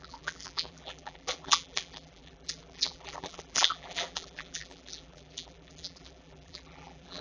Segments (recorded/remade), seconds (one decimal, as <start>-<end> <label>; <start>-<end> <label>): 0.0-7.2 remade